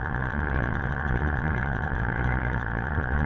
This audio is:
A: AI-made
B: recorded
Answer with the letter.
A